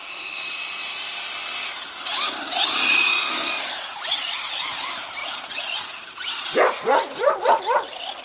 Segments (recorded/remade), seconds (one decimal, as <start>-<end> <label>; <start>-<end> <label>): 0.0-5.2 recorded; 5.2-5.8 remade; 5.8-6.9 recorded; 6.9-7.6 remade; 7.6-8.2 recorded